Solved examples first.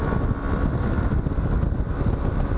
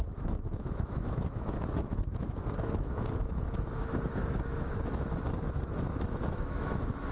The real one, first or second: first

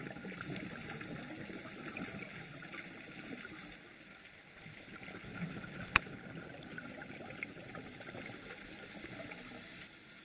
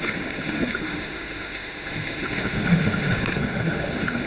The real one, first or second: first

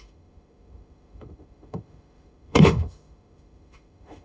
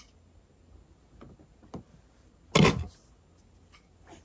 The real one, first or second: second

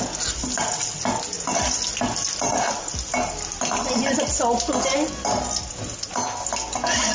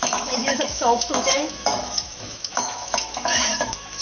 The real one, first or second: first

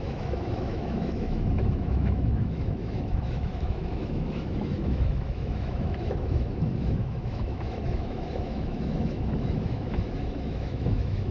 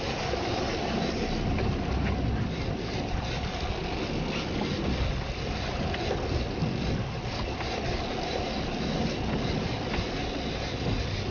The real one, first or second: second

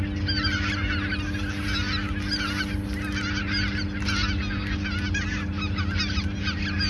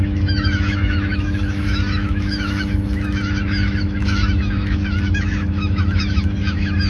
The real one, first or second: first